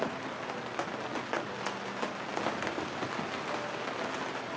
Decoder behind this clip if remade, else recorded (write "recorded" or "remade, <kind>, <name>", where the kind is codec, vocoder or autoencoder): recorded